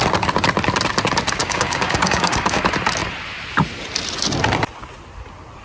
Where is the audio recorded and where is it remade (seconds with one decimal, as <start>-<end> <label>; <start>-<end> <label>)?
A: 0.0-1.4 recorded; 1.4-2.6 remade; 2.6-5.6 recorded